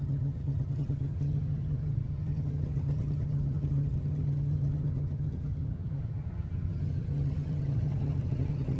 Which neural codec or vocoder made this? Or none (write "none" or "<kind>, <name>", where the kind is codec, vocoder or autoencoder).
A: vocoder, HiFi-GAN